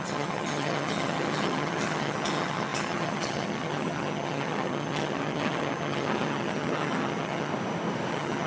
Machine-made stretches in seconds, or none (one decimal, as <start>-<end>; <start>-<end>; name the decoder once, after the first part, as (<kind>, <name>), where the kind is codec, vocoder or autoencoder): 0.0-7.5 (vocoder, HiFi-GAN); 8.1-8.5